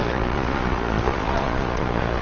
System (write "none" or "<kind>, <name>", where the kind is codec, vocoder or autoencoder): vocoder, Vocos